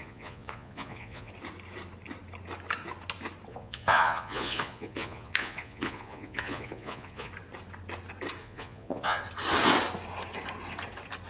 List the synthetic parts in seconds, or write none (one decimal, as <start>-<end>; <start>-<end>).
0.0-1.3; 3.5-7.3; 8.4-9.2